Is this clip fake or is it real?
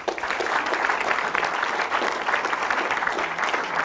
real